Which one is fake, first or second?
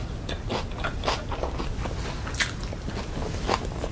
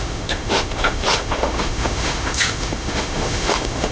second